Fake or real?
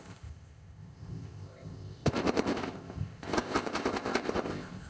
fake